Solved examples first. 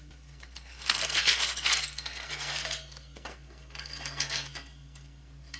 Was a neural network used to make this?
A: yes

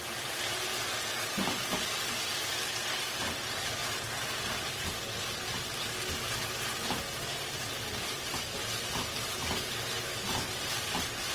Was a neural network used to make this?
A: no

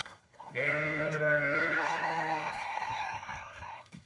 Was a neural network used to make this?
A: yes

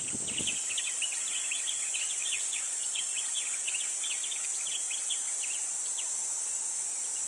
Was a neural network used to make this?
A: no